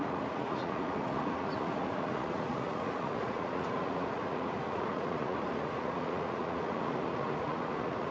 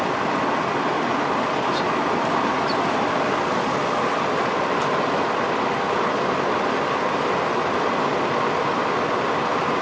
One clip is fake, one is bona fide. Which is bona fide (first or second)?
second